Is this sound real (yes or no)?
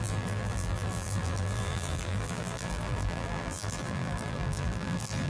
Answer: no